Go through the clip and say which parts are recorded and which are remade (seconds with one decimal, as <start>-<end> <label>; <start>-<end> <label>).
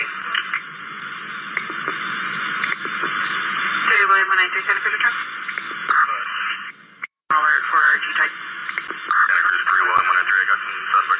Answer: 0.0-7.2 remade; 7.2-7.7 recorded; 7.7-8.6 remade; 8.6-11.2 recorded